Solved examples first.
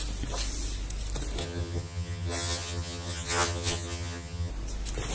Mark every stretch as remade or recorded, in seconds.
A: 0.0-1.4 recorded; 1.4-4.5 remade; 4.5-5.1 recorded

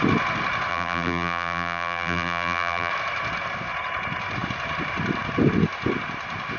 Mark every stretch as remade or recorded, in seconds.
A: 0.0-0.7 recorded; 0.7-2.9 remade; 2.9-6.6 recorded